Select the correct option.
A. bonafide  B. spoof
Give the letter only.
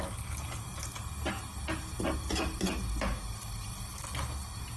A